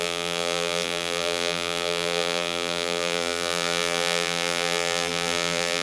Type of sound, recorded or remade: remade